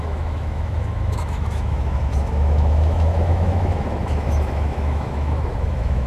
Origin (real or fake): fake